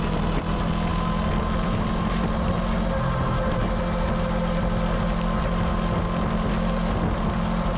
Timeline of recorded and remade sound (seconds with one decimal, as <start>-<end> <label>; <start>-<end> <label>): 0.0-7.8 recorded